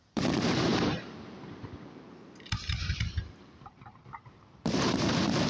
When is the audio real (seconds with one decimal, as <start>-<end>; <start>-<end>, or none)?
none